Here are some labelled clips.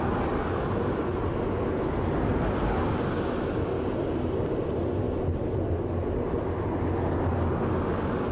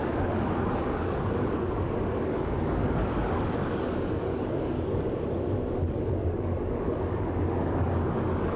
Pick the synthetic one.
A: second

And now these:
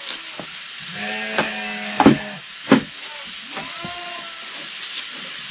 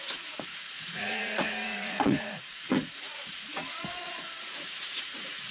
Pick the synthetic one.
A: second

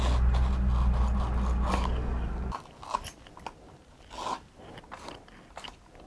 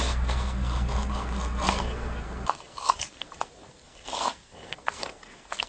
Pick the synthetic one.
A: second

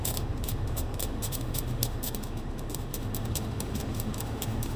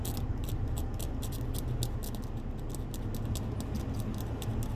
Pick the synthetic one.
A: first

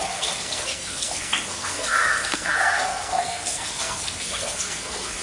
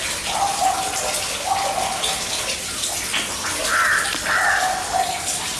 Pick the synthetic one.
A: first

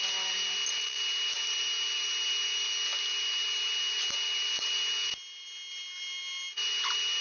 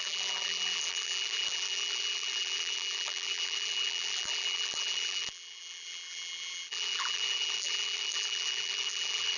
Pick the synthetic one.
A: second